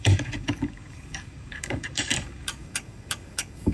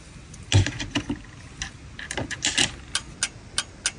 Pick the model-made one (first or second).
first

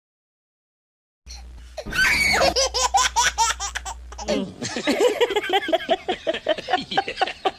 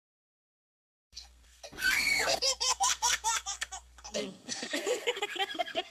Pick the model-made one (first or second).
second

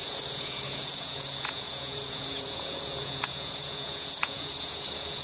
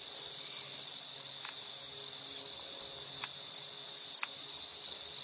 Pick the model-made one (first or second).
first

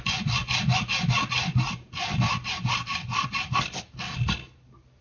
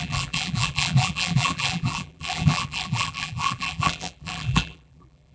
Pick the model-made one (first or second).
second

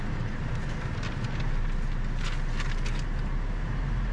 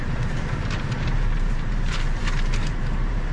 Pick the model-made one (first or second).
second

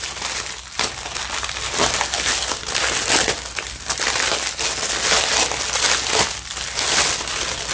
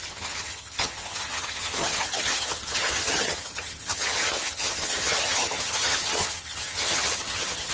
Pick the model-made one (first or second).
second